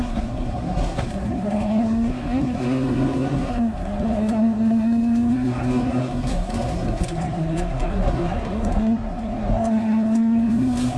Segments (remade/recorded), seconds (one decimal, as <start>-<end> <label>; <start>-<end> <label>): 0.0-11.0 remade